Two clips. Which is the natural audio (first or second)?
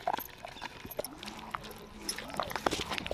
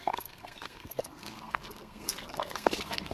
first